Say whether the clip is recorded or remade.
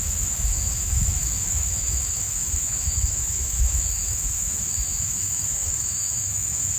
remade